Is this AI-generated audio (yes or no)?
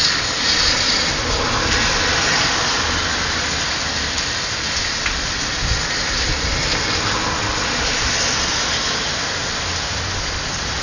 no